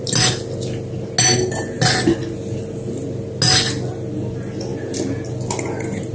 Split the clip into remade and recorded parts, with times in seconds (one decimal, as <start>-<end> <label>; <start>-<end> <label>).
0.0-6.1 recorded